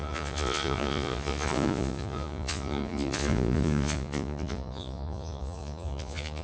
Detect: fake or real fake